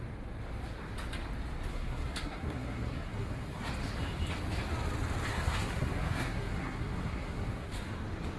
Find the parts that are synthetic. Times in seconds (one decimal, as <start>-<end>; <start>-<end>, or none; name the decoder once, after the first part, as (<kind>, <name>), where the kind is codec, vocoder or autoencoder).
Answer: 1.7-3.7 (codec, SNAC); 5.3-7.7